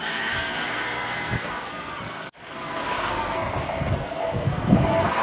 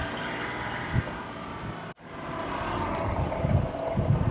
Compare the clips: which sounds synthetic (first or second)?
first